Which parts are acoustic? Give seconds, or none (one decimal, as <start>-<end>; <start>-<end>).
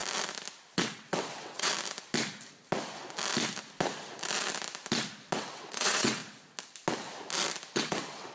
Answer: 0.0-0.7; 1.7-5.4; 6.2-7.7